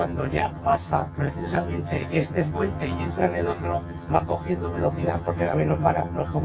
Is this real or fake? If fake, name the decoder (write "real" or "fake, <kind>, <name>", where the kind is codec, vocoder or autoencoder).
fake, vocoder, HiFi-GAN